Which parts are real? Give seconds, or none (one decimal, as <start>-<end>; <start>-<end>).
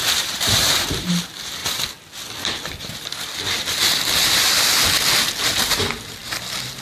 1.1-6.8